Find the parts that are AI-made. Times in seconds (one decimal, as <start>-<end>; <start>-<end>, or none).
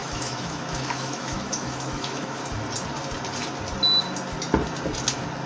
0.0-2.4